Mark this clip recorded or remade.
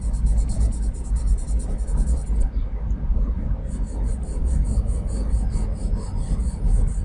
recorded